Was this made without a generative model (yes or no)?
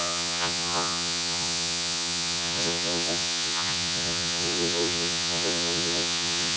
no